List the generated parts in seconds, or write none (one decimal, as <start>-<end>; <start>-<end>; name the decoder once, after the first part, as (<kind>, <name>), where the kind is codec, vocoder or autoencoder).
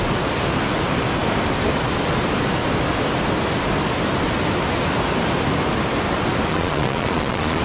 6.5-7.6 (vocoder, Vocos)